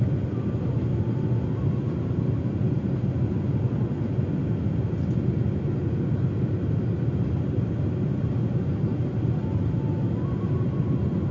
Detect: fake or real real